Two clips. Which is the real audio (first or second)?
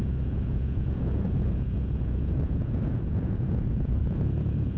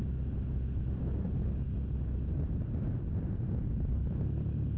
second